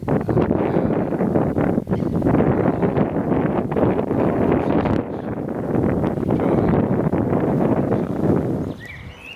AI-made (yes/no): no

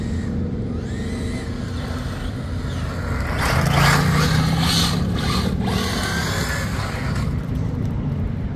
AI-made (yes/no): no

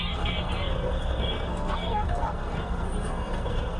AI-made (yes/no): yes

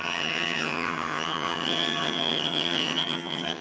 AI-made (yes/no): yes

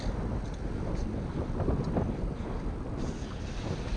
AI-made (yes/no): no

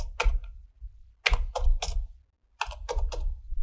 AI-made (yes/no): no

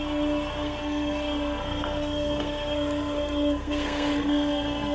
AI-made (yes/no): yes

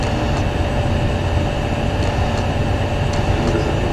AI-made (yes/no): no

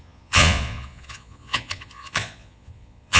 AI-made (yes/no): yes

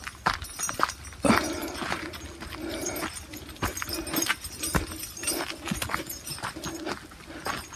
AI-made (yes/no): no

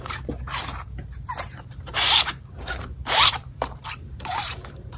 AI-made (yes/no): yes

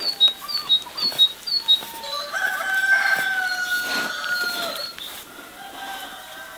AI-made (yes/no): no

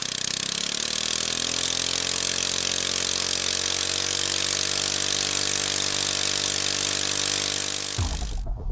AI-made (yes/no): no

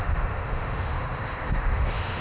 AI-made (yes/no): yes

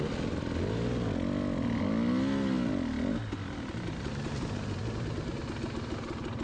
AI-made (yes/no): no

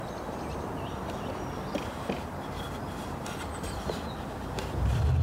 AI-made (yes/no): no